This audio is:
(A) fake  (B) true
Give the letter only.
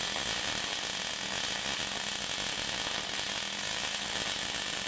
B